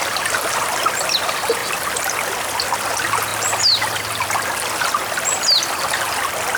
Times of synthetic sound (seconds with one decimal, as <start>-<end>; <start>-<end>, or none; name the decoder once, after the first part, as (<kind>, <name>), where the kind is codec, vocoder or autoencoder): none